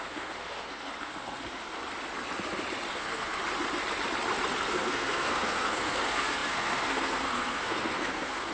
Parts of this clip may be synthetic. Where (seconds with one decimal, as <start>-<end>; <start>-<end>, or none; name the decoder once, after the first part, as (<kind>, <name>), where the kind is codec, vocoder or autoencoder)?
0.0-1.8 (codec, SNAC); 2.9-3.4; 4.7-8.5

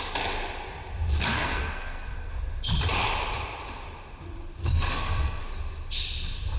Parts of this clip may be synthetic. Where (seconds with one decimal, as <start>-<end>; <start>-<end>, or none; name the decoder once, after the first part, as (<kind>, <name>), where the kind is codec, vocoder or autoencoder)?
1.3-2.3 (codec, SNAC); 4.6-5.4

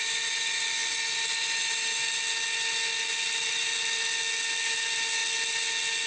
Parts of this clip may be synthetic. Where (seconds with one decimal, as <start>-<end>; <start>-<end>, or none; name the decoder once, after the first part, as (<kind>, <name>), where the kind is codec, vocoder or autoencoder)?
none

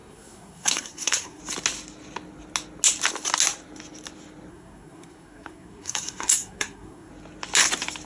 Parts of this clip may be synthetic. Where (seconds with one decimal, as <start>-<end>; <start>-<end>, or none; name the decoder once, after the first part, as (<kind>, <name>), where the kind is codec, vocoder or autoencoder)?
0.0-1.4 (codec, SNAC); 4.5-7.1

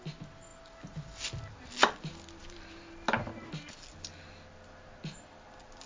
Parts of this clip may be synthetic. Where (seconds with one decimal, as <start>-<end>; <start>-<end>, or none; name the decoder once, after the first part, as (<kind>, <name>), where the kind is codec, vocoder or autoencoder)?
none

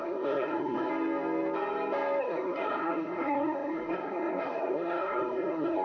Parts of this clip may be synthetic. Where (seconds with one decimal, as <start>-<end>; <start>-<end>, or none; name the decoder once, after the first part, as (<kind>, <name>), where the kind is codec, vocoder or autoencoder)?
0.0-0.9 (codec, SNAC); 2.2-5.8